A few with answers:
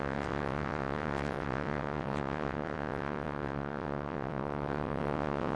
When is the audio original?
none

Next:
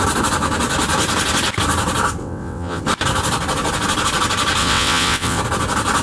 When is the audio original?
0.0-2.2; 2.8-4.6; 5.4-6.0

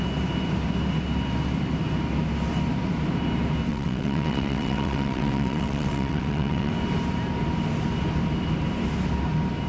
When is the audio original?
0.0-3.7; 6.7-9.7

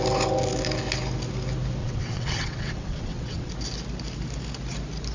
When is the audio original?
0.0-1.8; 3.5-5.1

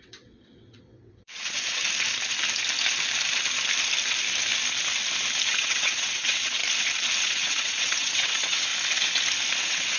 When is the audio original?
1.8-5.5; 6.6-7.2; 8.7-9.6